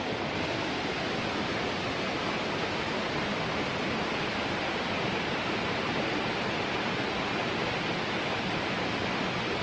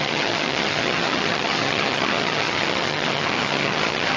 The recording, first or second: first